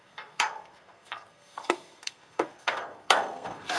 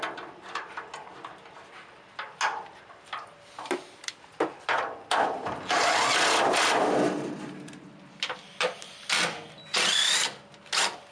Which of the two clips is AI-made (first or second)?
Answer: first